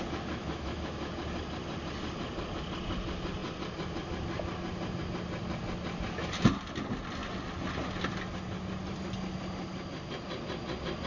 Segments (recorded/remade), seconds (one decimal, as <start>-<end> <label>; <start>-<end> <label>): 0.0-0.4 recorded; 0.4-1.1 remade; 1.1-11.1 recorded